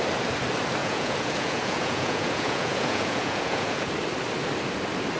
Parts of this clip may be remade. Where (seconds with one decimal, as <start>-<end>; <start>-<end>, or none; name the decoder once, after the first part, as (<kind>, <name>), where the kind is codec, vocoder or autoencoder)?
0.8-3.9 (vocoder, Vocos)